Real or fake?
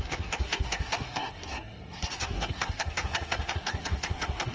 fake